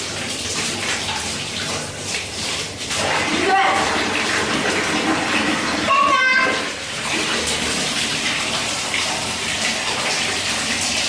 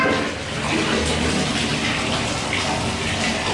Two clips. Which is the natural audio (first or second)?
second